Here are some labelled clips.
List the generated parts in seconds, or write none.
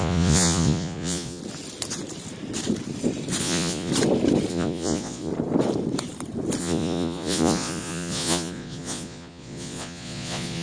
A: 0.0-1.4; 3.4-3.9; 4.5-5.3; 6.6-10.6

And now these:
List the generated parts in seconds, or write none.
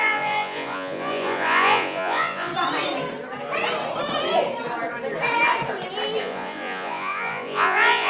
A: 0.0-2.5; 6.2-8.1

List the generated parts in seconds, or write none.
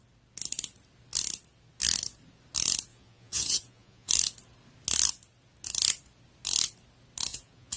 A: 2.9-4.1; 7.3-7.8